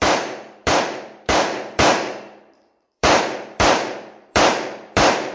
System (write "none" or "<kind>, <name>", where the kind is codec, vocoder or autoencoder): vocoder, BigVGAN v2